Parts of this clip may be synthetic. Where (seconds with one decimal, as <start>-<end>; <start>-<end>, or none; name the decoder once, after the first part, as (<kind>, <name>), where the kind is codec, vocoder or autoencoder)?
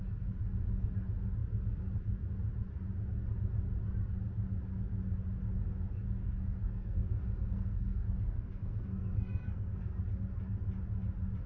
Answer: 6.2-10.0 (codec, SNAC)